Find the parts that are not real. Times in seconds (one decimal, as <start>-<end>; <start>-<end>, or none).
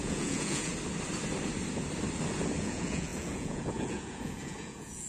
0.0-0.7; 2.6-5.1